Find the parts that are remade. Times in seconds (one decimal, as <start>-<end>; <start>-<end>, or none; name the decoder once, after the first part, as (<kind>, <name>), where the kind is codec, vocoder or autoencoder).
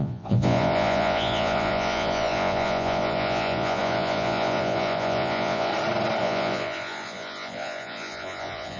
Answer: 0.0-5.7 (vocoder, Vocos); 6.2-8.8